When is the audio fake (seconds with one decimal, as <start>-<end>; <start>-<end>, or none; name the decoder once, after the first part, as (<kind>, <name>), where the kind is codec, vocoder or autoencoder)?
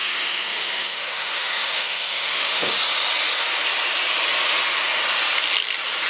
0.0-2.7 (autoencoder, DAC-VAE)